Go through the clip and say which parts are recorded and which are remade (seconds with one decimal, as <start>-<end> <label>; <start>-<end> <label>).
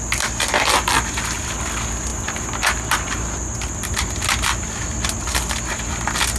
0.0-6.4 recorded